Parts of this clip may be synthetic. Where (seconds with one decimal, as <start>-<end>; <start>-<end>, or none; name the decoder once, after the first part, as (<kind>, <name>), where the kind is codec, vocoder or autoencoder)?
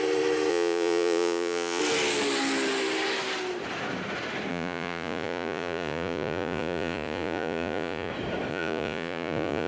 0.5-1.8 (vocoder, Vocos); 4.5-8.1; 8.5-9.7